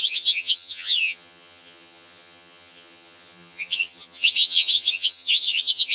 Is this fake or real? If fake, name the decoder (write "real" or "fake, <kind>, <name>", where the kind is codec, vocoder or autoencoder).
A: fake, vocoder, HiFi-GAN